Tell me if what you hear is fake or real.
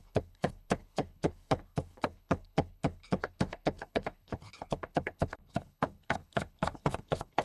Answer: fake